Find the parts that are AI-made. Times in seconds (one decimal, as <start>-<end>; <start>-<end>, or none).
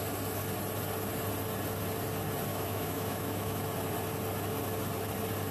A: 2.5-3.6